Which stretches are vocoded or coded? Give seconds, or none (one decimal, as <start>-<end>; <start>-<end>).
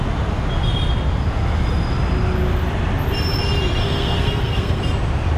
3.8-4.8